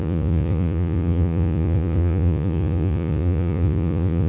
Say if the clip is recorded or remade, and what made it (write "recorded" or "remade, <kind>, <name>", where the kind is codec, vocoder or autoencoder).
remade, vocoder, Vocos